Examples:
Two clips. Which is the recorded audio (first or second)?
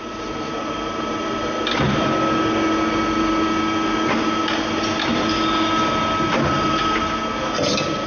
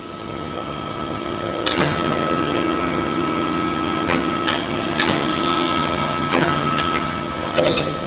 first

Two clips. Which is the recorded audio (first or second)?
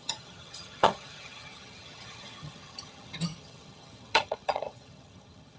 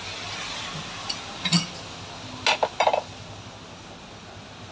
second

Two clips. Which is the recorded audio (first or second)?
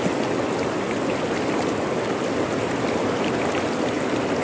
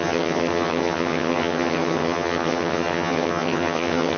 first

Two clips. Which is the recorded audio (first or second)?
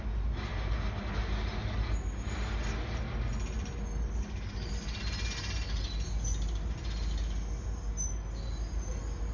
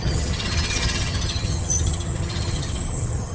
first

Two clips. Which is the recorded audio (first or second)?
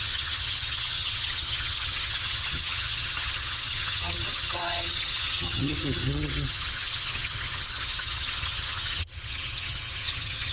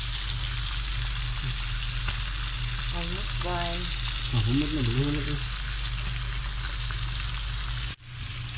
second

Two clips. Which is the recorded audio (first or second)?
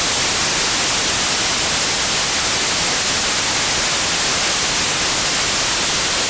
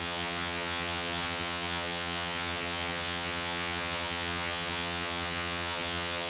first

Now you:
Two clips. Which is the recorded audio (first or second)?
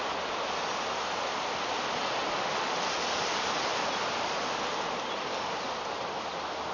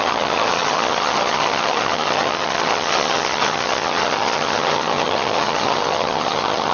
first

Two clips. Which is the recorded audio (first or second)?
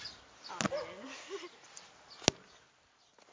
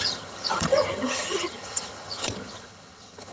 first